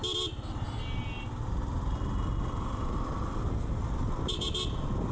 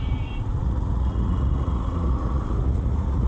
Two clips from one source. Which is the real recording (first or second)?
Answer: first